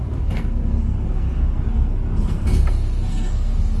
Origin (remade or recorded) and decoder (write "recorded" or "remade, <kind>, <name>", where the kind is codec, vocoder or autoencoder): remade, codec, SNAC